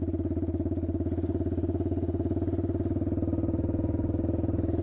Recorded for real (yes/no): yes